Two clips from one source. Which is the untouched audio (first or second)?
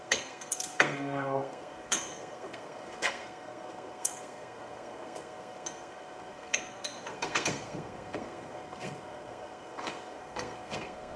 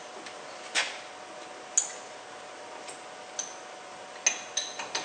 second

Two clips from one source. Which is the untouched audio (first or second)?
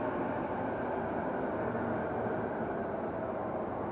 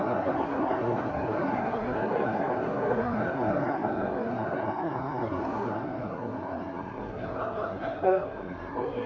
first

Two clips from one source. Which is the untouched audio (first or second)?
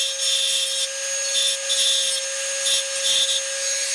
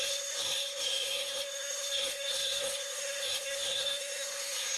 first